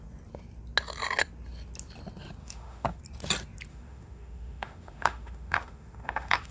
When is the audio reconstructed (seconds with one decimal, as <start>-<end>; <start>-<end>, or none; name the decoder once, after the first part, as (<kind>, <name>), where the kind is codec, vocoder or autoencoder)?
2.4-3.0 (autoencoder, DAC-VAE); 3.7-6.5